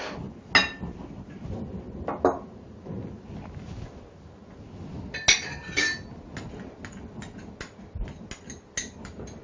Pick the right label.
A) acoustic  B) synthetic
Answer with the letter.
A